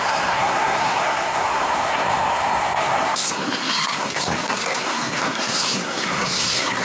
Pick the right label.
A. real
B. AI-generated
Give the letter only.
B